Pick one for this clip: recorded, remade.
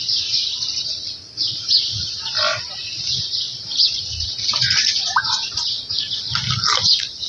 recorded